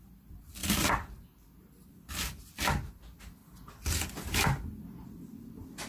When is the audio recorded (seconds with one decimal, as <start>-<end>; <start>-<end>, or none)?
0.0-5.9